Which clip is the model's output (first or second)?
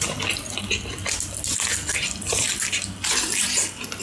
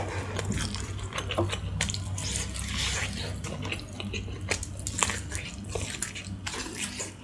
first